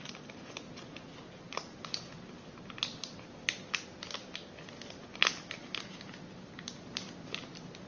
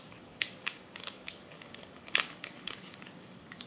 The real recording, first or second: first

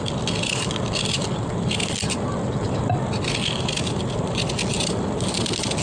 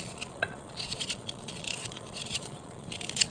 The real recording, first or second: first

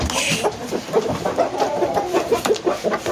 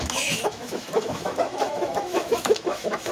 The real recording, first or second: first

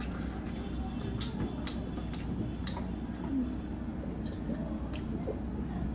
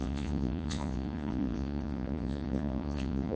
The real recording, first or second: first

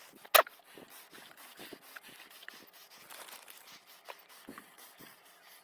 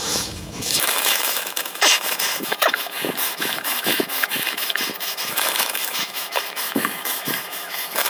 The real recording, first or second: first